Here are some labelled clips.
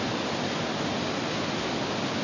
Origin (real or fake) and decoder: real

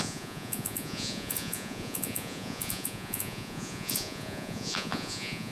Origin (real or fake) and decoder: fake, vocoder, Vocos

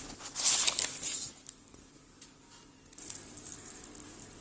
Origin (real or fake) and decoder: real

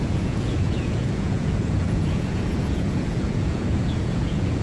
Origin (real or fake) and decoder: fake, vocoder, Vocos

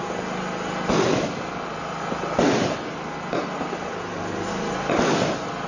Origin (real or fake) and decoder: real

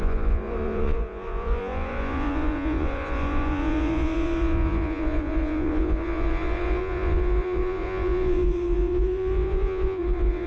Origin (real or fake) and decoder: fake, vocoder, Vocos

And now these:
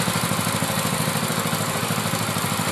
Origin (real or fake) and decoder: real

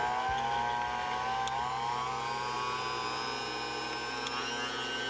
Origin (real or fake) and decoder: real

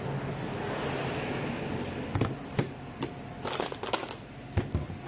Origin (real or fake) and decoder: real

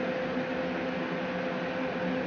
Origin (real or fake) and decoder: real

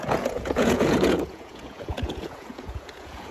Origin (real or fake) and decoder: fake, vocoder, Vocos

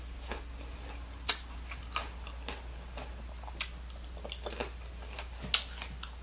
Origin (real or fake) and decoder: real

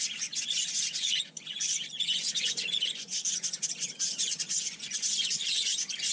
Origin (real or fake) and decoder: fake, vocoder, Vocos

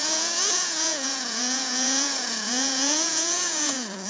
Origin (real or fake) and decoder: fake, vocoder, Vocos